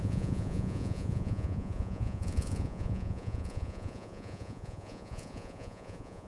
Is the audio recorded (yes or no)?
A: no